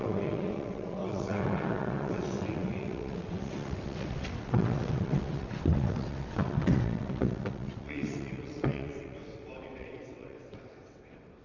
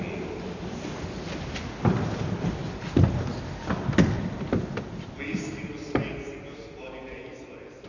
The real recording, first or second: second